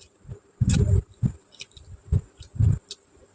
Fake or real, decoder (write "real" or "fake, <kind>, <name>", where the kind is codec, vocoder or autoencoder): real